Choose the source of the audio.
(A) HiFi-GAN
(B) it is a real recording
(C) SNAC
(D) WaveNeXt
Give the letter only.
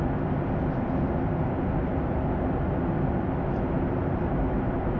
B